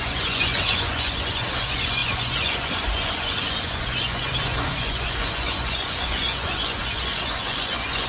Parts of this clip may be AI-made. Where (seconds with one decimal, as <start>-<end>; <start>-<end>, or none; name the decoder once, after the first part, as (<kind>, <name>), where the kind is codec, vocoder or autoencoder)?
0.0-8.1 (vocoder, Vocos)